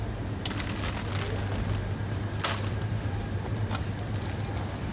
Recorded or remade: recorded